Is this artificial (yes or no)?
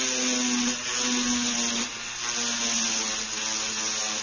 no